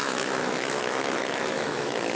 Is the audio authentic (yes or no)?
no